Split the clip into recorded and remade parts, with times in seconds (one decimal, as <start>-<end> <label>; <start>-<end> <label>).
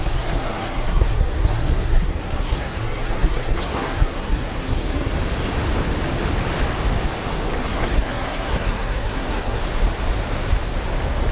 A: 0.0-5.1 remade; 5.1-7.6 recorded; 7.6-9.6 remade; 9.6-11.3 recorded